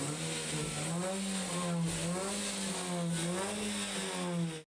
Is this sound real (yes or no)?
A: yes